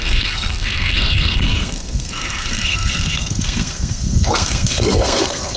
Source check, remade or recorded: remade